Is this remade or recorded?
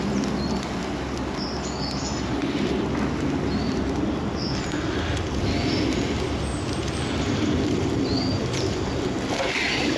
recorded